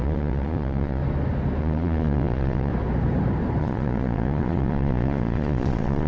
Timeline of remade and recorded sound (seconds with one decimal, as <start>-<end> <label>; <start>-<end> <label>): 0.0-1.0 remade; 1.0-1.6 recorded; 1.6-2.7 remade; 2.7-3.6 recorded; 3.6-6.1 remade